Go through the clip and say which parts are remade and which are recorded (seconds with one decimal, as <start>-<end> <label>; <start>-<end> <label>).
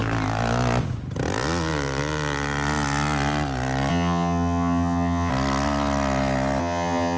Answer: 0.0-3.9 recorded; 3.9-5.3 remade; 5.3-6.6 recorded; 6.6-7.2 remade